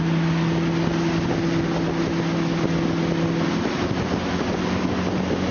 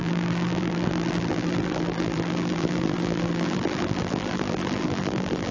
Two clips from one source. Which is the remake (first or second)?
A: second